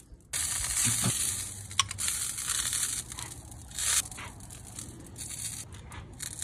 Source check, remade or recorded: recorded